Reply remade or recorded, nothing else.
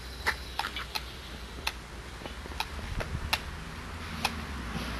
recorded